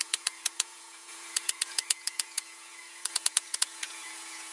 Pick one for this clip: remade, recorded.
remade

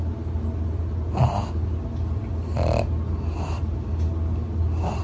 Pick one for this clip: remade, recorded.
recorded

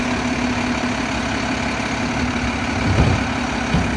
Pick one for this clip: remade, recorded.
recorded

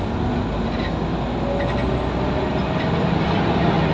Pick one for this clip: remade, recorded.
recorded